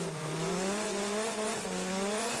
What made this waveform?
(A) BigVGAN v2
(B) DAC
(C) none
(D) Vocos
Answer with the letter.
D